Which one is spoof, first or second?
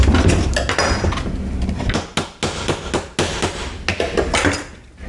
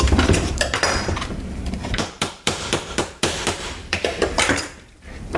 second